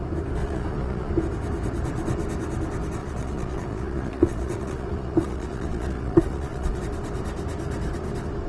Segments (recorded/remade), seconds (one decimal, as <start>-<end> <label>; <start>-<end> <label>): 0.0-0.4 recorded; 0.4-1.1 remade; 1.1-3.0 recorded; 3.0-6.8 remade; 6.8-8.5 recorded